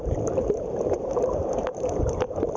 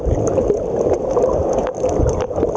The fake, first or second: first